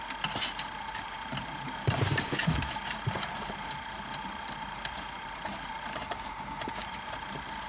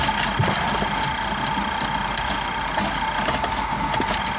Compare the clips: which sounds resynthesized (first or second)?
first